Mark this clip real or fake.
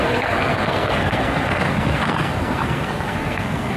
fake